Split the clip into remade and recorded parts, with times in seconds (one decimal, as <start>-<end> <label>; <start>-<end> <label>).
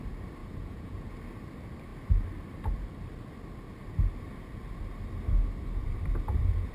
0.0-0.4 recorded; 0.4-1.1 remade; 1.1-6.7 recorded